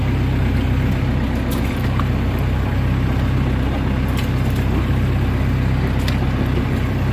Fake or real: real